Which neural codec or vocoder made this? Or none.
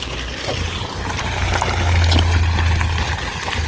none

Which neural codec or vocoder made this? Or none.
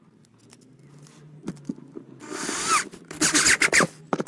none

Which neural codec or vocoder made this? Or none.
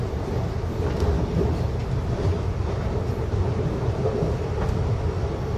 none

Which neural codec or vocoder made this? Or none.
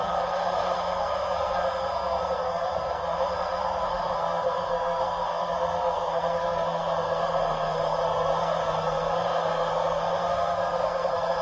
codec, SNAC